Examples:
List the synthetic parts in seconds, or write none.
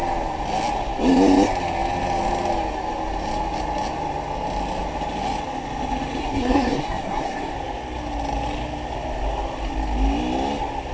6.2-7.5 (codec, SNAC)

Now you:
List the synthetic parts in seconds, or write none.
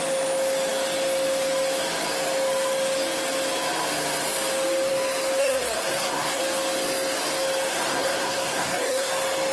5.4-6.4 (codec, SNAC); 7.7-9.1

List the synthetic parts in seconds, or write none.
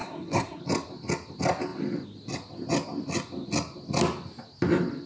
0.0-0.6 (codec, SNAC)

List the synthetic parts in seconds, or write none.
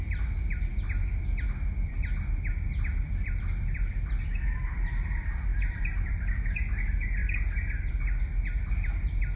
none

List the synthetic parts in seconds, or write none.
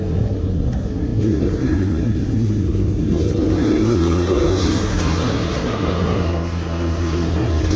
0.0-7.8 (codec, SNAC)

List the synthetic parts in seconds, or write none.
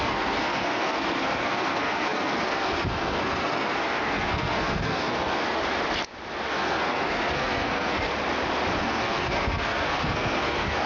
0.0-5.6 (codec, SNAC); 6.5-8.1; 8.8-10.9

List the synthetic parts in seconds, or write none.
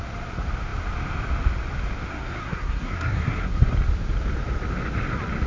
2.1-3.7 (codec, SNAC)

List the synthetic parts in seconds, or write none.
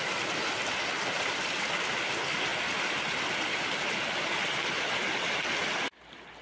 none